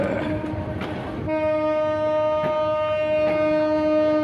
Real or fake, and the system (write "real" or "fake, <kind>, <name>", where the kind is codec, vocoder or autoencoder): real